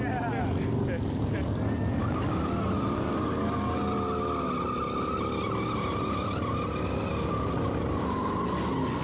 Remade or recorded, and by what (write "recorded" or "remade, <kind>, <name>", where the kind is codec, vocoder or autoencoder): recorded